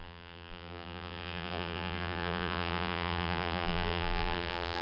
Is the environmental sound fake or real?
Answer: fake